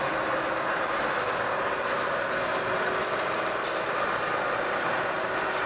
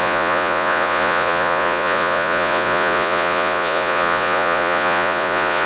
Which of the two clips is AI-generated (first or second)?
second